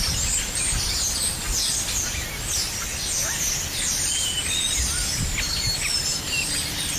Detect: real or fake real